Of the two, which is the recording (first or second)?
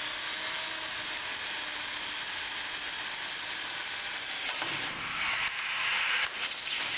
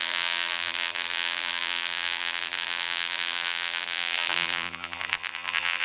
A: first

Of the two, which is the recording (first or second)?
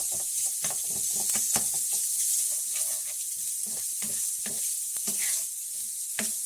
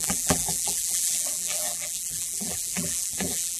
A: first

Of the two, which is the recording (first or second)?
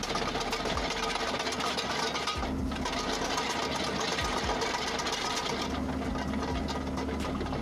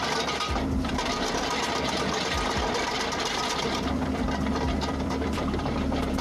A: first